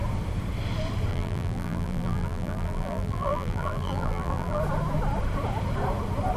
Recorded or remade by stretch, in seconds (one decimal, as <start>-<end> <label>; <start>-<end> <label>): 0.0-1.1 recorded; 1.1-4.6 remade; 4.6-6.4 recorded